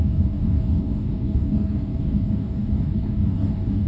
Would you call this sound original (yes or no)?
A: no